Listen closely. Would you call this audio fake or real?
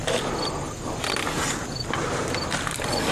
real